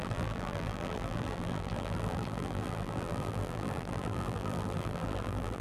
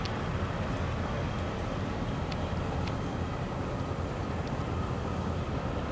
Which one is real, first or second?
second